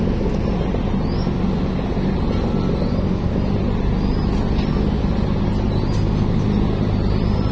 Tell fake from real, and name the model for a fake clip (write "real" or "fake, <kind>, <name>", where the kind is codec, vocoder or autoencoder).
real